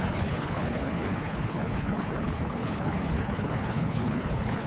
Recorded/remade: remade